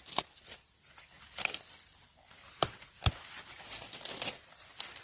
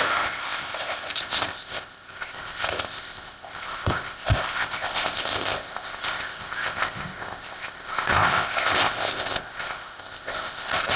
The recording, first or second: first